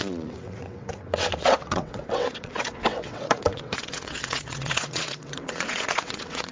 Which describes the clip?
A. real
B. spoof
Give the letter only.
B